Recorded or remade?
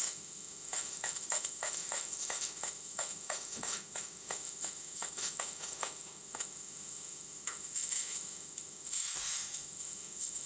remade